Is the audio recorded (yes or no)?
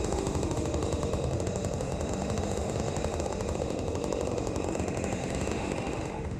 no